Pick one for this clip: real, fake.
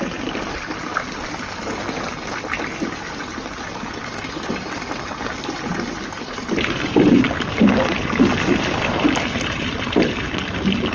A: real